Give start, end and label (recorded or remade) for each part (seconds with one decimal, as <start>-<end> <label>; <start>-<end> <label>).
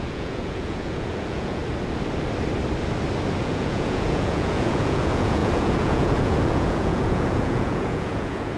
0.0-1.6 remade; 1.6-3.4 recorded; 3.4-8.6 remade